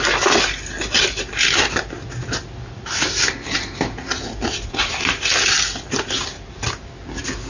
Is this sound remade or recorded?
recorded